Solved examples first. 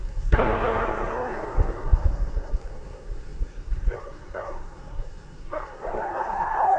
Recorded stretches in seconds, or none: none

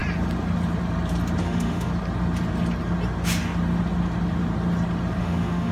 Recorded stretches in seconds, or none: 0.0-1.4; 1.9-5.2

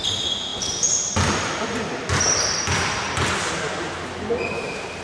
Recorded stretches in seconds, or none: 0.0-5.0

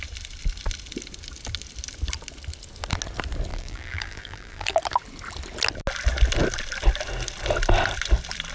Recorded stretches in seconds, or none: 0.0-3.5; 4.8-8.5

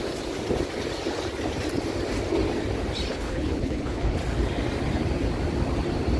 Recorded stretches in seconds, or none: 0.0-3.1; 4.2-6.2

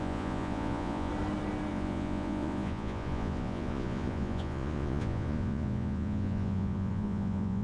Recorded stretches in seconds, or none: 1.1-1.7

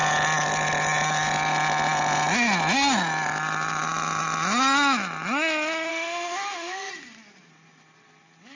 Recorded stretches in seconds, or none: 0.0-5.9; 6.9-8.6